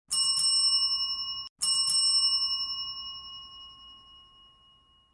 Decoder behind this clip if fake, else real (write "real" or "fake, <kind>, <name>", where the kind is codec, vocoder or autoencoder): real